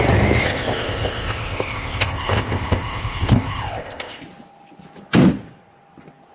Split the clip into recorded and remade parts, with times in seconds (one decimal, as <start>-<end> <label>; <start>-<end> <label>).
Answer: 0.0-0.4 recorded; 0.4-4.2 remade; 4.2-6.3 recorded